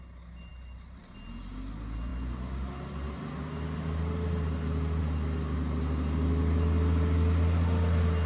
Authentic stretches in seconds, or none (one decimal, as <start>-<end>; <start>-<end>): 0.0-8.3